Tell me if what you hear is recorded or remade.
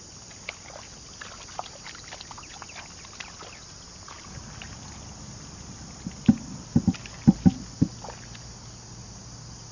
recorded